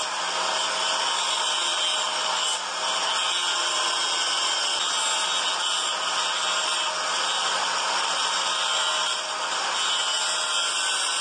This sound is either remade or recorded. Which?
recorded